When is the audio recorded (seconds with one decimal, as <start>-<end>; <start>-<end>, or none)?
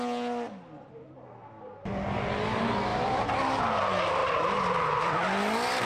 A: 0.0-2.9; 3.6-4.2; 5.0-5.8